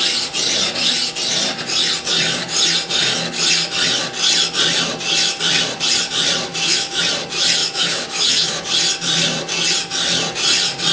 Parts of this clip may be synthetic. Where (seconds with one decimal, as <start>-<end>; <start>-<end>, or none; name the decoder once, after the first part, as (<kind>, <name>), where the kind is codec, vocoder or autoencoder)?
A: 6.5-7.0 (autoencoder, DAC-VAE); 7.6-8.7